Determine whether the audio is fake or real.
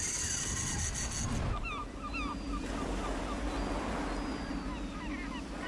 real